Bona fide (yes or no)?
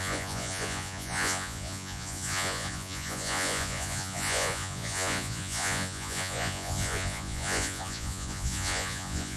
no